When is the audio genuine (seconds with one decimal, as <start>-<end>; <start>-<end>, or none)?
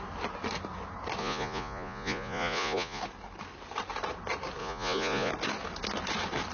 0.0-1.2; 3.0-4.6; 5.3-6.5